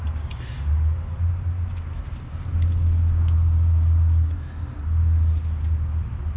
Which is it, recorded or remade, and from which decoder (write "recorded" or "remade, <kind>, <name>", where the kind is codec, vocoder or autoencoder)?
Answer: recorded